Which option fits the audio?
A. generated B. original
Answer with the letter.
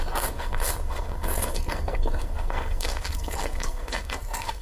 A